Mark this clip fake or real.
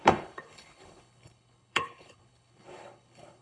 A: fake